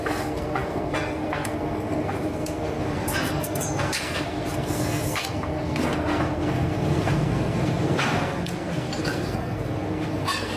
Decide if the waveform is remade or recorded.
remade